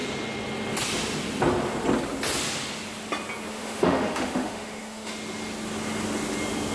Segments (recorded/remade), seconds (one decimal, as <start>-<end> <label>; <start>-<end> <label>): 0.0-3.5 recorded; 3.5-5.1 remade; 5.1-6.7 recorded